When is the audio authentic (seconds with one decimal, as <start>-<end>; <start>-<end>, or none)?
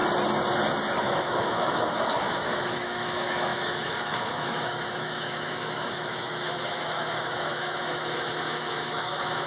0.0-1.0